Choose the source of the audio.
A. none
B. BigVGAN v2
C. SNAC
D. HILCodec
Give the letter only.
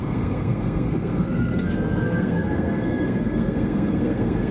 C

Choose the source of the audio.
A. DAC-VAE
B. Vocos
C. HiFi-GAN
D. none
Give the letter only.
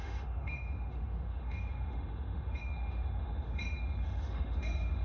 A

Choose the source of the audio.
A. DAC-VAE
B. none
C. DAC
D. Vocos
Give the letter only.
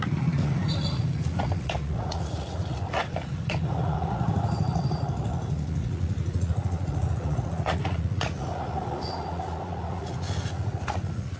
D